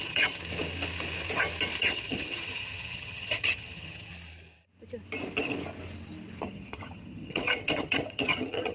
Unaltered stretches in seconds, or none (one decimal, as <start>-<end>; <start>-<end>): 0.4-1.8; 4.1-6.4